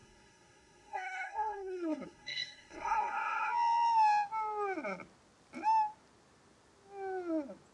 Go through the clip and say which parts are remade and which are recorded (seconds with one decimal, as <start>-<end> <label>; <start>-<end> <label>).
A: 0.0-3.5 remade; 3.5-7.7 recorded